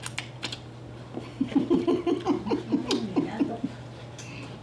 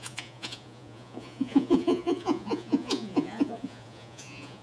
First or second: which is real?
first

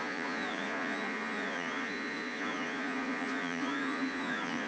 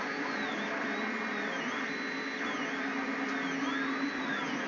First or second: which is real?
second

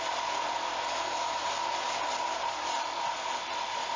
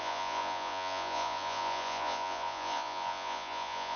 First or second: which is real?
first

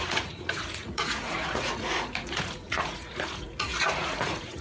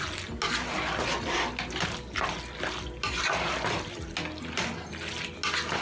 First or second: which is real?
second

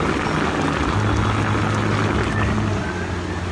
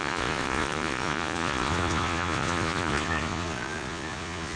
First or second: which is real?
first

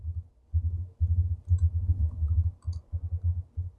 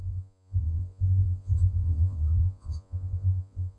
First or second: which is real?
first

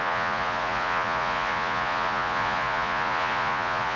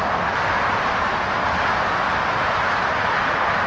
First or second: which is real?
second